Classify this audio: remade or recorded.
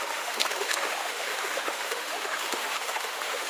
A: remade